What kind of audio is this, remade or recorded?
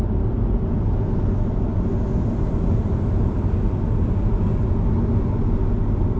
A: recorded